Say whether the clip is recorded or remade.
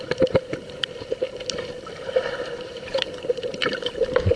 remade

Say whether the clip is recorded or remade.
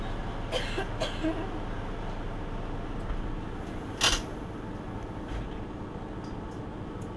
recorded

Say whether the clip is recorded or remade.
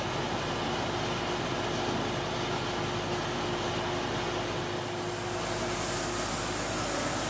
recorded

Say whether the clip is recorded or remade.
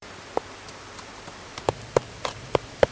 remade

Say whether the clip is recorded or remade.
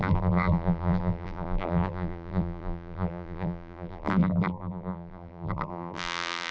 remade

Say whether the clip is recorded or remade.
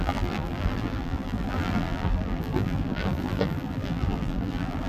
remade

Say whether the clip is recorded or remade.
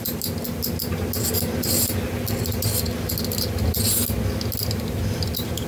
recorded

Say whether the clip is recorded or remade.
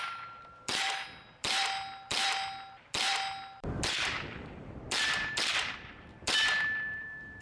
remade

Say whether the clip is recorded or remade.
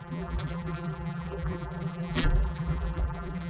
remade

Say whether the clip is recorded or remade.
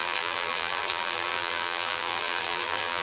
remade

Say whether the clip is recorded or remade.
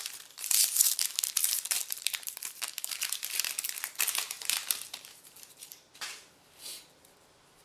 remade